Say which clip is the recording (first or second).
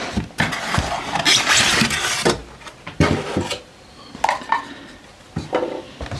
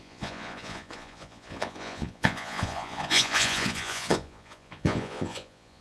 first